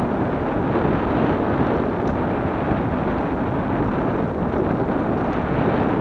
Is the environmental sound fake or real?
real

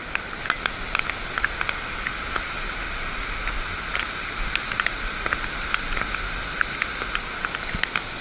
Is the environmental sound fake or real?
real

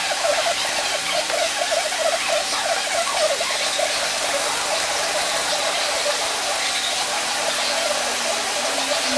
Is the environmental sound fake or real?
real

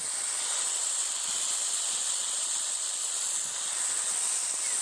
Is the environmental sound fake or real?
real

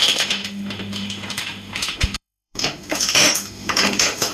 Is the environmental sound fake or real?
fake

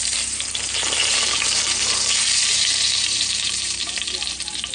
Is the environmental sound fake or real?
fake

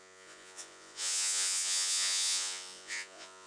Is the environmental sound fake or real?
fake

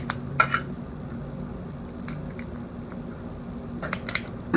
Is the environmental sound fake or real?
real